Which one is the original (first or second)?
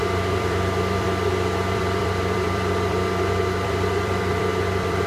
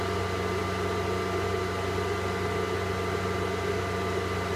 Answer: second